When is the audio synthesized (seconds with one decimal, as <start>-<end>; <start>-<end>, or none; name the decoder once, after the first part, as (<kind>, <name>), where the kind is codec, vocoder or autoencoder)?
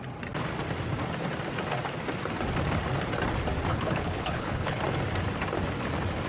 3.7-4.8 (codec, HILCodec)